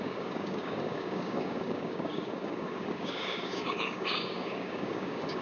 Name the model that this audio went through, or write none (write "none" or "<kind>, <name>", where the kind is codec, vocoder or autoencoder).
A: codec, DAC